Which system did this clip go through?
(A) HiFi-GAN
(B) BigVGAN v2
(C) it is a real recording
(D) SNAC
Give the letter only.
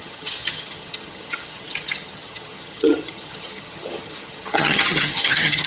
A